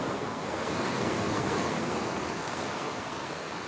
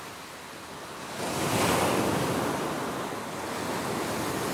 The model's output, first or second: first